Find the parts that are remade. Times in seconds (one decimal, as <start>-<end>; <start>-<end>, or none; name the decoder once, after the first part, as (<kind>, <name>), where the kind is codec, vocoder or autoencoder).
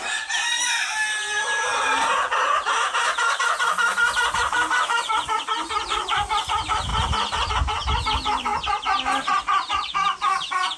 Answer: 0.0-8.5 (vocoder, BigVGAN v2); 9.4-10.8